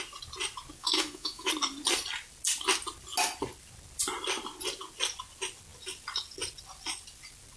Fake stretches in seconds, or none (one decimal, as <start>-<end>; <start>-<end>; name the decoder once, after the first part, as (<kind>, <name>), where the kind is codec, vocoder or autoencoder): 0.8-1.5 (autoencoder, DAC-VAE)